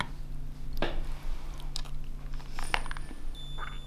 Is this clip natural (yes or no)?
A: yes